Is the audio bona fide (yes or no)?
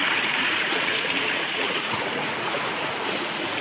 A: no